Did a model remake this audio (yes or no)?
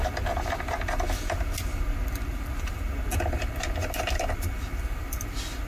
no